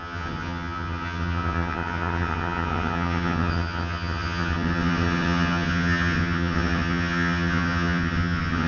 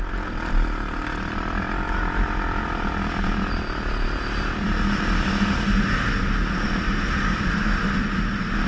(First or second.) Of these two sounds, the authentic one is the second